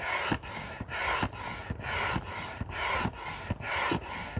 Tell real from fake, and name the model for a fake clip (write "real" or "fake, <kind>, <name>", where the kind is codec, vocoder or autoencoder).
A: real